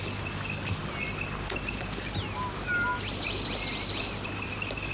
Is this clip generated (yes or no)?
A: no